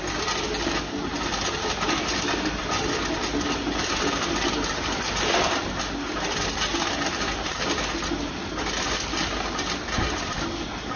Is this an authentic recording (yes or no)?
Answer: yes